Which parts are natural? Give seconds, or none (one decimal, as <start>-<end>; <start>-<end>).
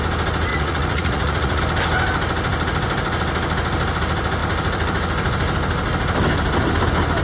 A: 0.0-0.5; 1.6-7.2